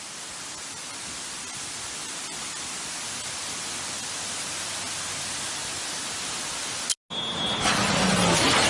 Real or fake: real